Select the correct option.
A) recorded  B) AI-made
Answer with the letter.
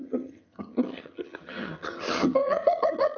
B